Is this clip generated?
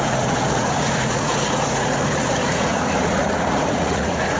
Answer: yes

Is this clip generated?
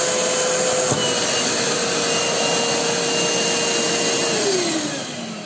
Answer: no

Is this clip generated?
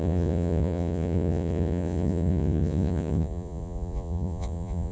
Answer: yes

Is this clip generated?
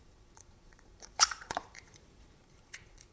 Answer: yes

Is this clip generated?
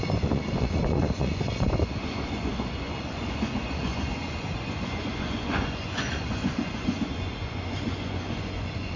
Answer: yes